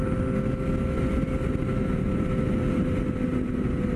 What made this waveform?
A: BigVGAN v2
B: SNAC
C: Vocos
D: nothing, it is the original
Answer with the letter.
D